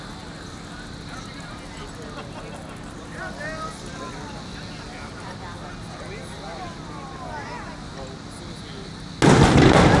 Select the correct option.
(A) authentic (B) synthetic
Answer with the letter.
A